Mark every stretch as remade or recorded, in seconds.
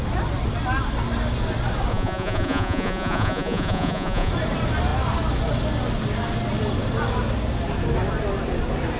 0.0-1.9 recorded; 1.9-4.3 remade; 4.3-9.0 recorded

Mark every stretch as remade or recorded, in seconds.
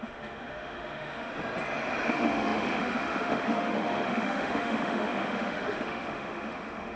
0.0-1.3 remade; 1.3-2.1 recorded; 2.1-7.0 remade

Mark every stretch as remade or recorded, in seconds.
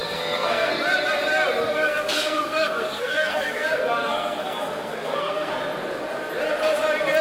0.0-0.7 remade; 0.7-1.7 recorded; 1.7-5.5 remade; 5.5-7.2 recorded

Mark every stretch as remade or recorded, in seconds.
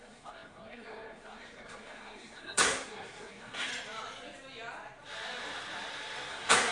0.0-3.7 remade; 3.7-6.3 recorded; 6.3-6.7 remade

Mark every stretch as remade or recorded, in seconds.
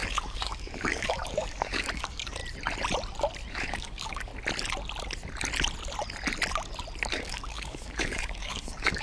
0.0-2.4 remade; 2.4-3.5 recorded; 3.5-4.3 remade; 4.3-7.1 recorded; 7.1-9.0 remade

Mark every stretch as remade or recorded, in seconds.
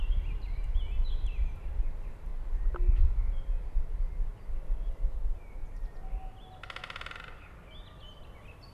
0.0-2.3 remade; 2.3-4.9 recorded; 4.9-5.6 remade; 5.6-8.2 recorded; 8.2-8.7 remade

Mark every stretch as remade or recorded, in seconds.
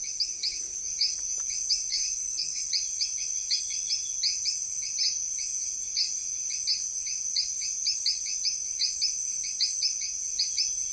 0.0-1.9 recorded; 1.9-2.7 remade; 2.7-10.9 recorded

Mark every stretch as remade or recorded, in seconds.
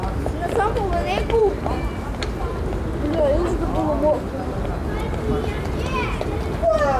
0.0-7.0 recorded